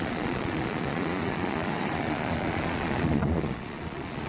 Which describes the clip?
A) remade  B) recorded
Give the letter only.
A